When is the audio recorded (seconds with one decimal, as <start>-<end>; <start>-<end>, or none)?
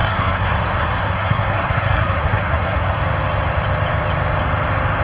3.0-5.0